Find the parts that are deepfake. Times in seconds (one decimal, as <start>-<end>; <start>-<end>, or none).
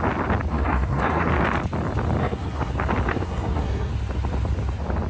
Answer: 0.5-1.3; 2.2-2.7; 3.1-3.9